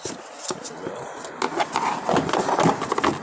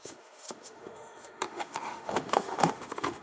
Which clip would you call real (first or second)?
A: first